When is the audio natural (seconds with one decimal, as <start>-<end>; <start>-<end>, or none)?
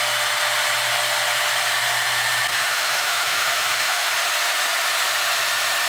0.0-2.5; 4.1-5.9